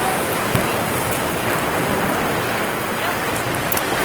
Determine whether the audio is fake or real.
real